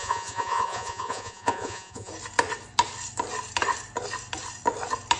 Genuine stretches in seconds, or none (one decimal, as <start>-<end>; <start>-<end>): 2.1-5.2